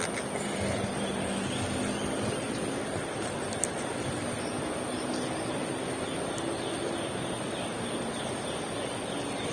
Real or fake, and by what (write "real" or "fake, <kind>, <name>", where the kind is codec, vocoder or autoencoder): real